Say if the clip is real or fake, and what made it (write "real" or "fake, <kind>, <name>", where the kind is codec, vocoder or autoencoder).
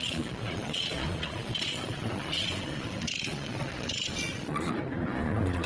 fake, vocoder, Vocos